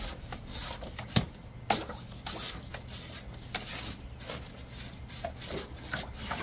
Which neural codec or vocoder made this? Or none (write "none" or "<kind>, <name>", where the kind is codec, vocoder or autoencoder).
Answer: none